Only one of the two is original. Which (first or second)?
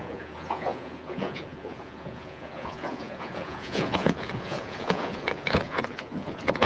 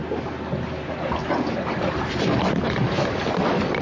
second